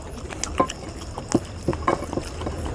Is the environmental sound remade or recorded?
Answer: recorded